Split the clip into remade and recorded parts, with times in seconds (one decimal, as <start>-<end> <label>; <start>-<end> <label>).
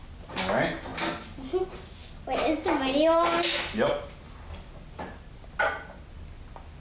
0.0-6.8 recorded